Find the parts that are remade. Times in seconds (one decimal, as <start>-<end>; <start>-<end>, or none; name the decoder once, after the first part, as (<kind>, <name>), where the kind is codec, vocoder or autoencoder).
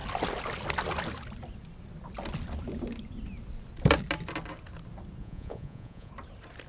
5.2-6.1 (vocoder, Vocos)